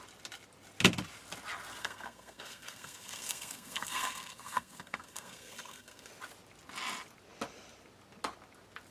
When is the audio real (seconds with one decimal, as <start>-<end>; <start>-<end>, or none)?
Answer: 0.0-1.8; 6.1-8.9